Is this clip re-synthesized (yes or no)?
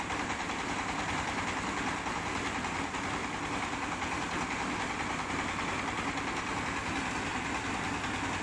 no